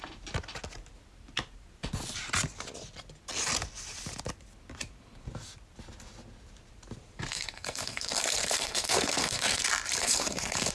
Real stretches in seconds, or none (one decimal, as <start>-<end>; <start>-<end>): 0.0-7.3; 9.6-10.0

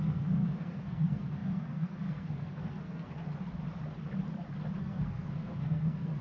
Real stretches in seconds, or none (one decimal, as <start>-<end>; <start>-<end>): 3.2-4.8

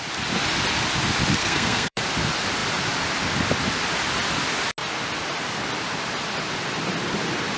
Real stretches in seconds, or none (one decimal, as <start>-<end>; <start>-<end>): 0.0-1.4; 2.0-7.6

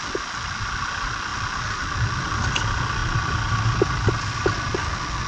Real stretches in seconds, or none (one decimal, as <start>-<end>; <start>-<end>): 0.0-5.3

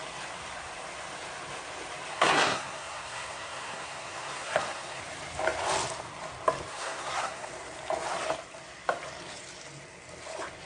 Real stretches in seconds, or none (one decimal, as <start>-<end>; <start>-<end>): 0.0-2.1; 5.0-6.7; 7.5-10.7

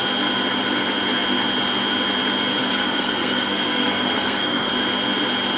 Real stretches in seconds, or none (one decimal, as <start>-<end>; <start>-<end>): 0.0-2.6; 4.7-5.6

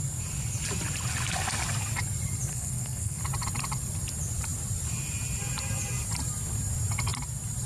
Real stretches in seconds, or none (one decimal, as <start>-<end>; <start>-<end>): 0.0-2.5; 3.2-7.7